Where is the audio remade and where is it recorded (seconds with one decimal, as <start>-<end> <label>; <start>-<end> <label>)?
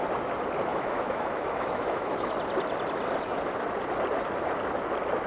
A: 0.0-0.7 recorded; 0.7-2.3 remade; 2.3-5.3 recorded